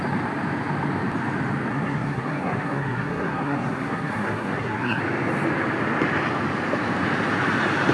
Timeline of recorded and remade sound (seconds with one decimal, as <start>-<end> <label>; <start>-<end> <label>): 0.0-1.7 recorded; 1.7-5.0 remade; 5.0-7.9 recorded